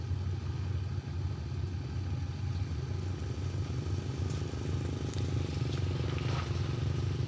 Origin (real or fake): real